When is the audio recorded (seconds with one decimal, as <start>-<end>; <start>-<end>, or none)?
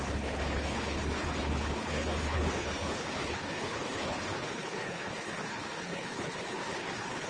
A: none